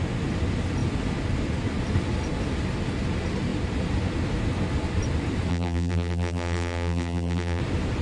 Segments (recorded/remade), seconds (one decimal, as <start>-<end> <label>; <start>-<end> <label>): 0.0-5.5 recorded; 5.5-7.6 remade; 7.6-8.0 recorded